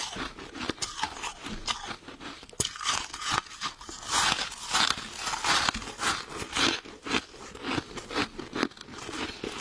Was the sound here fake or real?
real